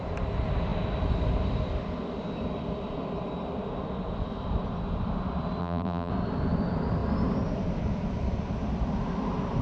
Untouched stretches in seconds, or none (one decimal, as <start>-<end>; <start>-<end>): 0.0-5.6; 6.1-9.6